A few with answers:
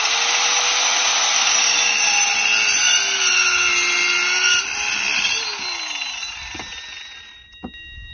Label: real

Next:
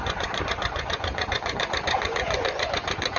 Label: fake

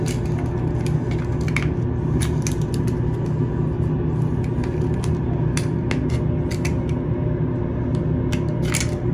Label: real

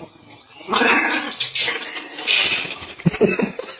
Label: real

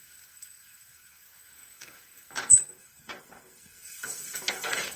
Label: fake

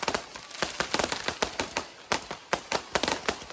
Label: real